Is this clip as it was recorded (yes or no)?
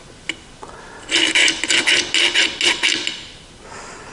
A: yes